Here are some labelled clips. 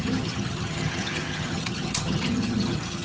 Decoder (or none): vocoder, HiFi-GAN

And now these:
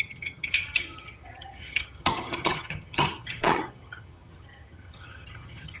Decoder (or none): vocoder, HiFi-GAN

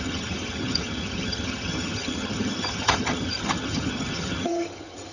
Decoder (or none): vocoder, HiFi-GAN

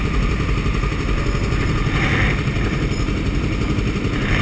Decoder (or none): none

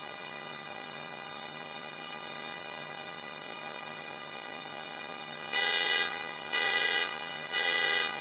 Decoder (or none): vocoder, HiFi-GAN